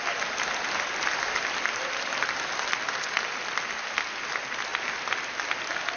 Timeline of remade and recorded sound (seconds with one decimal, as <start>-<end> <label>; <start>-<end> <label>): 0.0-6.0 recorded